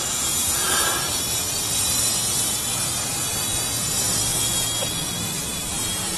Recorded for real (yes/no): no